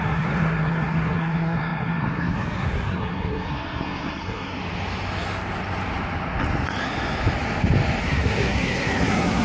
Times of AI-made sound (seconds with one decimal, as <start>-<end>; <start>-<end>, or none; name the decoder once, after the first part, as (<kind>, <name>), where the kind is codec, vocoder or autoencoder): 0.0-4.6 (codec, SNAC); 8.0-9.4